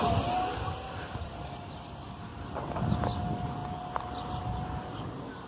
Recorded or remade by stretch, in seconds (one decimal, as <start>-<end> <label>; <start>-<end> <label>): 0.0-5.5 recorded

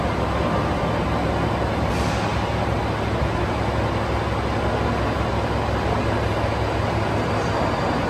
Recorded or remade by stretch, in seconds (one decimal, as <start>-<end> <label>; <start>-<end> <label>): 0.0-8.1 recorded

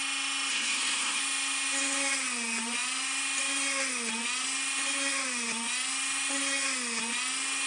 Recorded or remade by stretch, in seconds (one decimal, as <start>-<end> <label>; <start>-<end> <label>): 0.0-0.5 recorded; 0.5-1.2 remade; 1.2-7.7 recorded

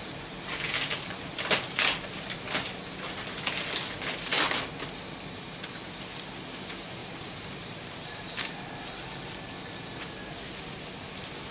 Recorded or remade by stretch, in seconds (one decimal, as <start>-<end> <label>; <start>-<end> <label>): 0.0-7.0 recorded; 7.0-8.5 remade; 8.5-11.5 recorded

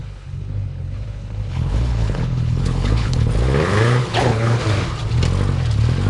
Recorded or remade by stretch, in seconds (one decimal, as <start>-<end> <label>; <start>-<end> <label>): 0.0-3.3 remade; 3.3-4.0 recorded; 4.0-4.6 remade; 4.6-6.1 recorded

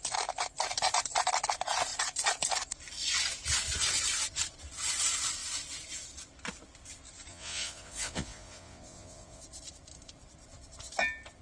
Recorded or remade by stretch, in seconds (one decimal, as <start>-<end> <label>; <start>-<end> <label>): 0.0-7.3 recorded; 7.3-9.4 remade; 9.4-11.4 recorded

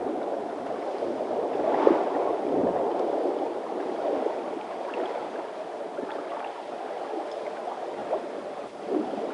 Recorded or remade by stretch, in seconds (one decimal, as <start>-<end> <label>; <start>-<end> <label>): 0.0-9.3 recorded